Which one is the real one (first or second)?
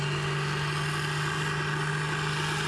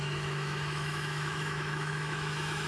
first